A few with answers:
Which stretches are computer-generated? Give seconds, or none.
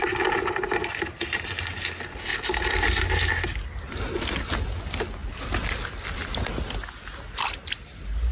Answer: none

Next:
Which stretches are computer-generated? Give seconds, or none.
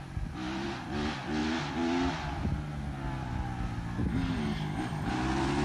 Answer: 4.1-5.1 (codec, DAC)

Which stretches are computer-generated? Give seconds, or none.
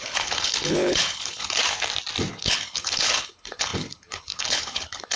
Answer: 0.0-1.6 (codec, HILCodec); 2.3-5.2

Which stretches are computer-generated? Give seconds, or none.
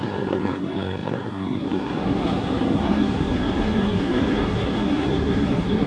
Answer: 0.0-5.9 (codec, SNAC)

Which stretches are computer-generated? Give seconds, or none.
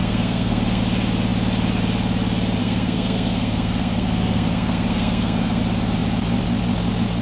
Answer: 0.0-0.8 (codec, SNAC); 2.6-5.6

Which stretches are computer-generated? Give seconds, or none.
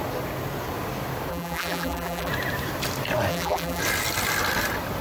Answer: 1.3-2.3 (vocoder, BigVGAN v2); 3.3-3.8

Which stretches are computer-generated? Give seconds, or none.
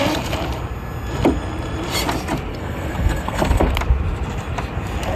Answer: 2.5-3.7 (codec, SNAC)